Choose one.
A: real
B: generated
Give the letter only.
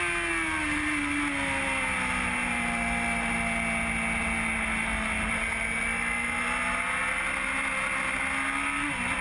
A